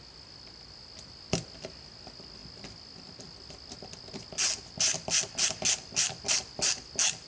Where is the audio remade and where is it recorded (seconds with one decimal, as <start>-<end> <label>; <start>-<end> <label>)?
0.0-7.3 recorded

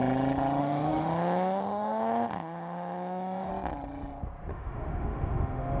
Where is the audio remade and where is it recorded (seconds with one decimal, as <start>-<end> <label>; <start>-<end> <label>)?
0.0-0.6 recorded; 0.6-3.5 remade; 3.5-4.5 recorded; 4.5-5.8 remade